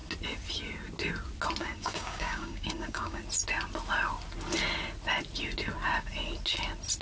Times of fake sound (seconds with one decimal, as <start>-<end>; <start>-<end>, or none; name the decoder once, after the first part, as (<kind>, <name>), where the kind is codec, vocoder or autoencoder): 1.6-3.2 (codec, DAC)